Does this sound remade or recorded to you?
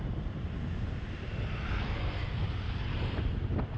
recorded